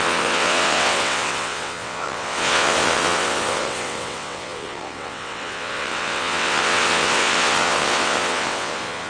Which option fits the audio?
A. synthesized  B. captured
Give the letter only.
A